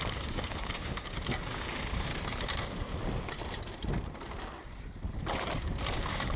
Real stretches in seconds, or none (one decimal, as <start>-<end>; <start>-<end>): 2.1-5.9